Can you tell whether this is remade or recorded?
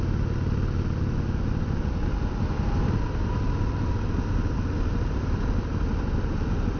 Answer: recorded